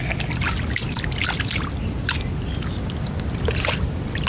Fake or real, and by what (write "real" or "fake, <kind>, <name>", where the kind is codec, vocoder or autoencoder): real